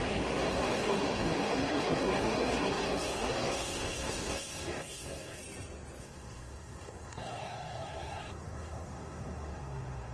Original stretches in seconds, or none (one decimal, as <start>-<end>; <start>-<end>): 5.4-6.0